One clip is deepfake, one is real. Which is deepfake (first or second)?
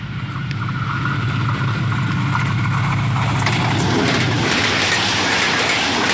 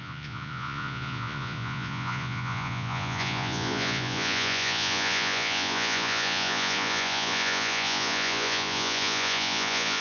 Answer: second